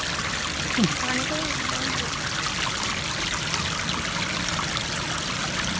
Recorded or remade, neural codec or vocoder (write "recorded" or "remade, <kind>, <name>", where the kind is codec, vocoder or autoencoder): recorded